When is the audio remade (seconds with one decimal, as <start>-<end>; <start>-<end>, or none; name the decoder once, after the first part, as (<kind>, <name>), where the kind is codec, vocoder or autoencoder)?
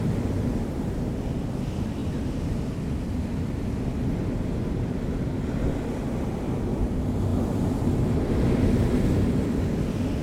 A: none